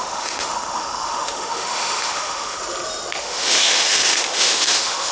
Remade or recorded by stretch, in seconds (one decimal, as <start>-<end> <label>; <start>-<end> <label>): 0.0-2.6 remade; 2.6-3.2 recorded; 3.2-5.1 remade